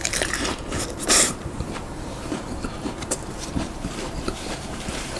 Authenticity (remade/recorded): remade